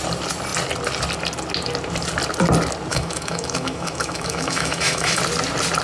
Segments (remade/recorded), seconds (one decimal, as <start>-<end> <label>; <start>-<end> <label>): 0.0-2.9 recorded; 2.9-5.2 remade; 5.2-5.8 recorded

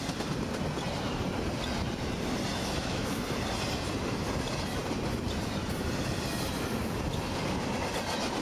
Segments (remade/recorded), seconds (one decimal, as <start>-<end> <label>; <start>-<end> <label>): 0.0-2.6 recorded; 2.6-3.2 remade; 3.2-8.4 recorded

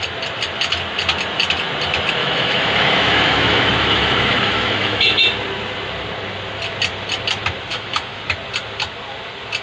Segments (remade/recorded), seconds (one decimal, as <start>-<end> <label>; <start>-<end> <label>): 0.0-2.2 recorded; 2.2-5.2 remade; 5.2-7.7 recorded; 7.7-8.2 remade; 8.2-9.6 recorded